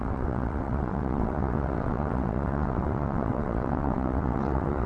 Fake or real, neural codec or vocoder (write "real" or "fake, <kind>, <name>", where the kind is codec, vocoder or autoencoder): fake, vocoder, WaveNeXt